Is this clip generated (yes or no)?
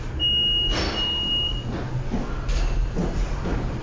no